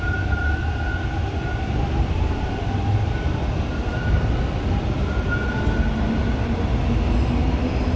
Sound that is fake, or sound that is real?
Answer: real